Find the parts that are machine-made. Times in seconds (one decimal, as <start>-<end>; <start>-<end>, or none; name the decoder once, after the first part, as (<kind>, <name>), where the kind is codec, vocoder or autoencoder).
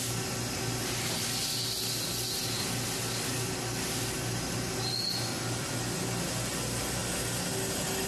none